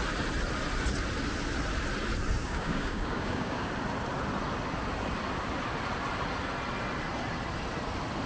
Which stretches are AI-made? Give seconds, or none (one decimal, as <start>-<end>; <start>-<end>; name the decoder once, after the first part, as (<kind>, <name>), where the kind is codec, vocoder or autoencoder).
2.4-3.7 (codec, DAC)